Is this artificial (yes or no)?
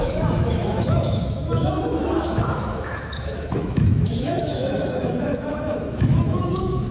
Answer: yes